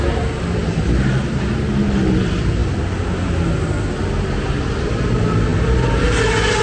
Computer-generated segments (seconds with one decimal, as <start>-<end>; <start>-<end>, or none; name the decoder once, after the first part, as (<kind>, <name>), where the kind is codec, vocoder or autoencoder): none